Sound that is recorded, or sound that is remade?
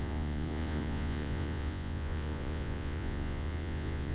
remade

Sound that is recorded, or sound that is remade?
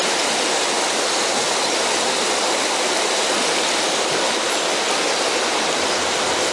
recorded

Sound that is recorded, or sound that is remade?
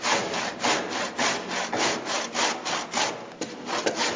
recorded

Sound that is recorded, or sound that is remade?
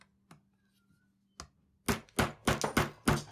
recorded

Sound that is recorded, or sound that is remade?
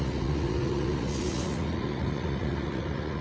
remade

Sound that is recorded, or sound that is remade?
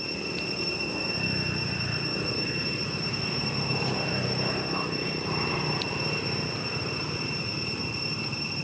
remade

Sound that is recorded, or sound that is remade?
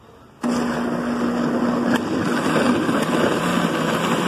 recorded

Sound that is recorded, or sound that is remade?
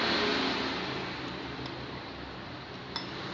recorded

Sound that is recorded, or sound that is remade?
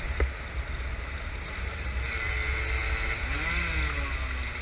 recorded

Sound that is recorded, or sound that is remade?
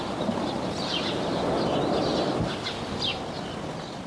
recorded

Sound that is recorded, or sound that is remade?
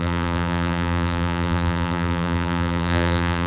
remade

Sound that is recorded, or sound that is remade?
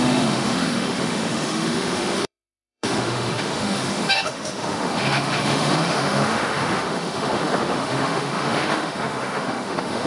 remade